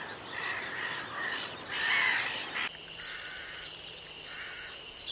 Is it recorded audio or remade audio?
recorded